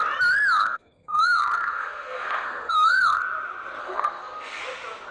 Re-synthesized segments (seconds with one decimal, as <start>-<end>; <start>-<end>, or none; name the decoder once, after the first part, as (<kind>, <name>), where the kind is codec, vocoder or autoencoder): 0.6-3.2 (codec, SNAC); 3.8-4.6